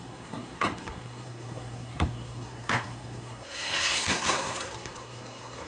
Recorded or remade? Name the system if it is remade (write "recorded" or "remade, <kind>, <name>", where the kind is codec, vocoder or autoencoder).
remade, codec, SNAC